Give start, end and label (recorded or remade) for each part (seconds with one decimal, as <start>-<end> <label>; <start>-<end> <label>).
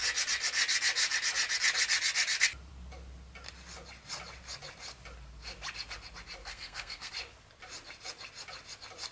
0.0-6.4 recorded; 6.4-7.1 remade; 7.1-9.1 recorded